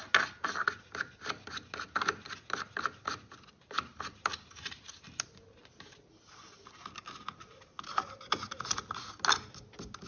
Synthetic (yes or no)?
no